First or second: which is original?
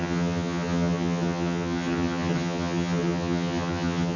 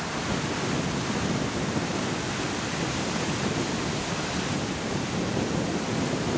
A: second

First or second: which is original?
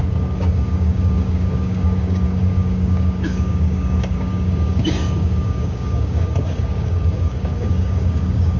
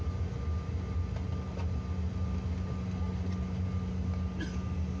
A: second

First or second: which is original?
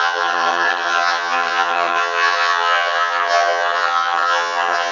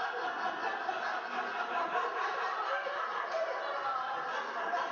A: second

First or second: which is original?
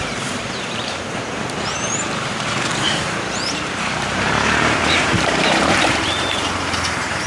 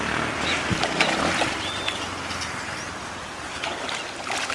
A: second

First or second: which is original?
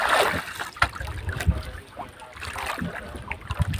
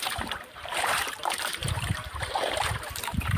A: first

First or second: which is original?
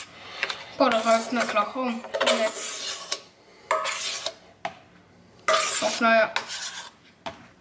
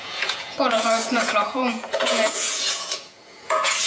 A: first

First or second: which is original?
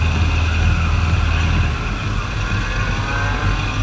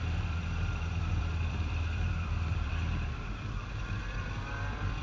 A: first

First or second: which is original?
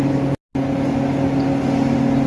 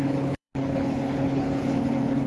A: first